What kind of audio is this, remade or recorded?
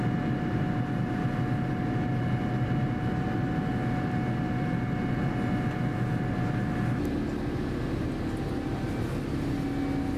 recorded